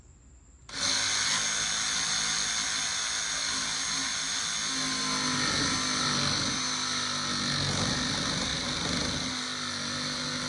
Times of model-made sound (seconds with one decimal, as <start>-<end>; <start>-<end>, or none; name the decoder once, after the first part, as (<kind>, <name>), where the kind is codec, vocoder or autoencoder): none